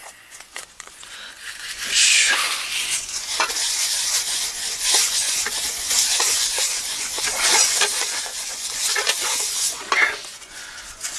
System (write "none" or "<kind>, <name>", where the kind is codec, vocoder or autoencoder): vocoder, Vocos